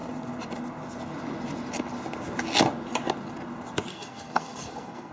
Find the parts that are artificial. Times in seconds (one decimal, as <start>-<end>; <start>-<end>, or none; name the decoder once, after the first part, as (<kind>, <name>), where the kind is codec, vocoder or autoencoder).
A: 3.9-5.1 (codec, SNAC)